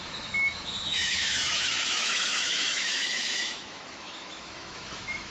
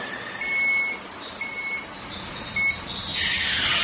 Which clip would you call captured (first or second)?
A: second